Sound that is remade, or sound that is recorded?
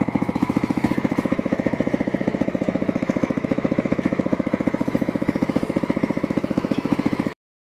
remade